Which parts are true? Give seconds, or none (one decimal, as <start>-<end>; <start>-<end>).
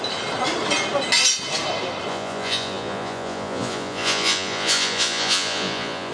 0.0-2.1